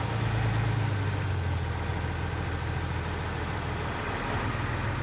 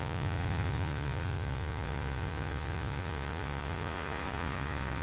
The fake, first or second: second